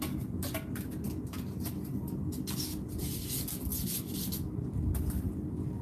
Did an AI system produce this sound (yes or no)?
no